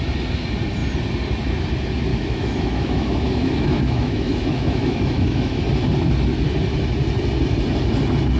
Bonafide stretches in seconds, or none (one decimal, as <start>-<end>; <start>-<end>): 0.0-2.1; 5.6-8.4